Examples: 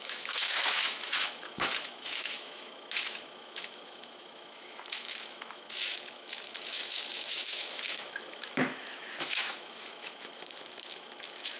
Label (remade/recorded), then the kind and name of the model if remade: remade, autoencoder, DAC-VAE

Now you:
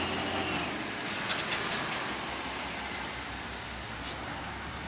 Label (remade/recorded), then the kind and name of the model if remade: recorded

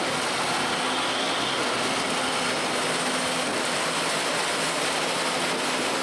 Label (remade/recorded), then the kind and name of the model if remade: recorded